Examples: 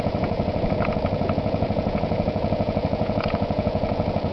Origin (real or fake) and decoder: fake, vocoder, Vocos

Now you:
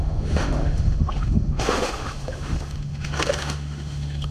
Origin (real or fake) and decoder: fake, autoencoder, DAC-VAE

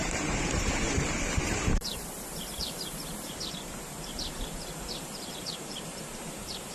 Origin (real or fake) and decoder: fake, vocoder, BigVGAN v2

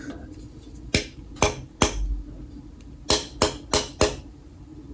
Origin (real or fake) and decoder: real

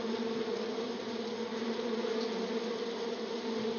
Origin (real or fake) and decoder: real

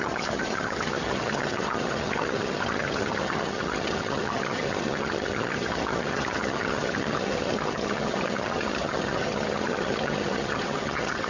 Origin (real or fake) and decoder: fake, vocoder, HiFi-GAN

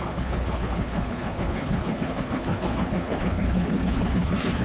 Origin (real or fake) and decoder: fake, codec, HILCodec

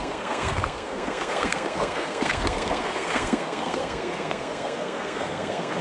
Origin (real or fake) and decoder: fake, codec, SNAC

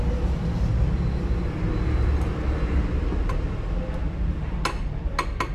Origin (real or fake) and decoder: real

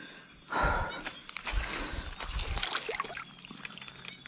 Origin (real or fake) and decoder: real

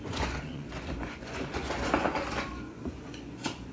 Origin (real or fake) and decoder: fake, vocoder, Vocos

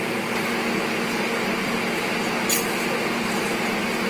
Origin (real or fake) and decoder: real